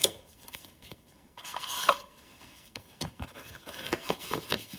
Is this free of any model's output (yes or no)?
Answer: no